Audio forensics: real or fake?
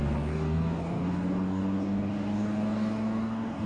fake